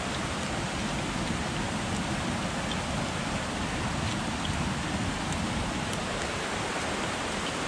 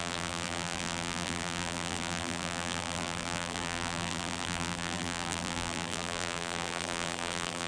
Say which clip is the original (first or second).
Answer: first